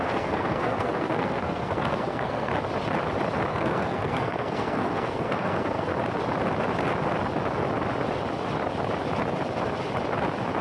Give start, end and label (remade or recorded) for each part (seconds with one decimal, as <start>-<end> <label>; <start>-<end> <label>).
0.0-2.5 remade; 2.5-3.5 recorded; 3.5-5.9 remade; 5.9-10.6 recorded